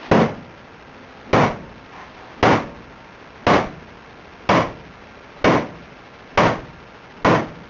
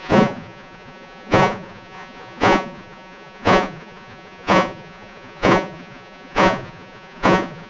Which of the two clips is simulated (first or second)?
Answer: second